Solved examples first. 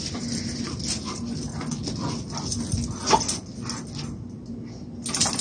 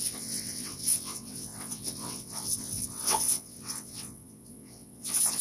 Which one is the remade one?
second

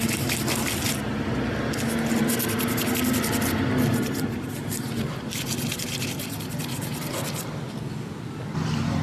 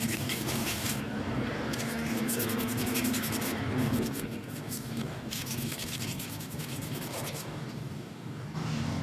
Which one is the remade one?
second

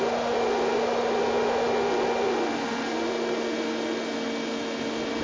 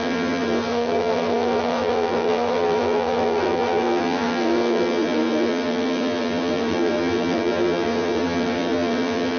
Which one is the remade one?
second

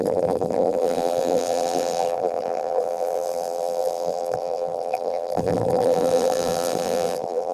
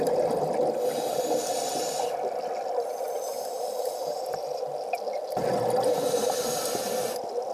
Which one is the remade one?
first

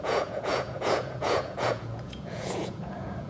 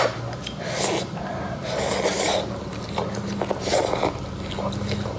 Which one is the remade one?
first